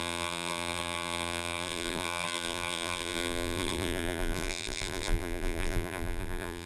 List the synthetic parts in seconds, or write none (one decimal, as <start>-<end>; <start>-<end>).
0.0-6.7